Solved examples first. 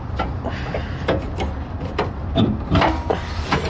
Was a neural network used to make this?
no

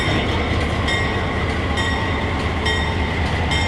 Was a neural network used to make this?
no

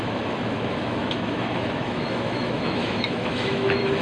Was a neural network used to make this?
yes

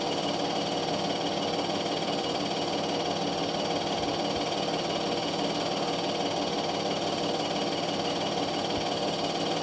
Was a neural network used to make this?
no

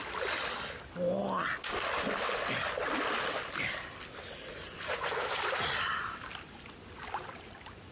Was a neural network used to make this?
no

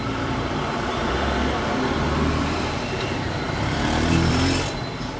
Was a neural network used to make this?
yes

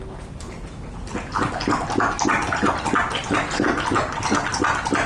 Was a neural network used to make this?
no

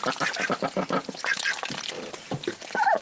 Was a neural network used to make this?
no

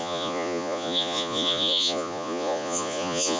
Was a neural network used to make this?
yes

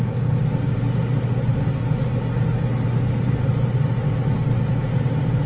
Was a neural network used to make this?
no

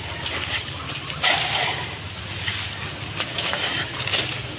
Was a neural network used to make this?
no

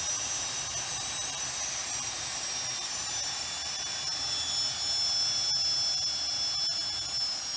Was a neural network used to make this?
no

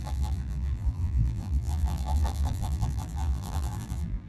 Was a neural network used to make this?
yes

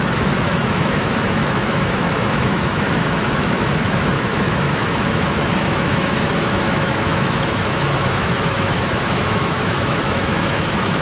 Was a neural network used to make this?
yes